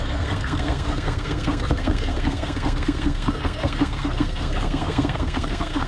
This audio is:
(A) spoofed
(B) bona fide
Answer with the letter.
A